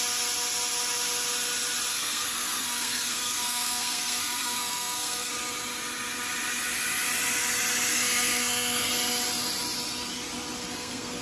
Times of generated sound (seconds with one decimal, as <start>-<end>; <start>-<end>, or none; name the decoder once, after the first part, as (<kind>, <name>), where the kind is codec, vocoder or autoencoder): 1.9-5.3 (codec, SNAC); 7.9-8.9; 10.6-11.2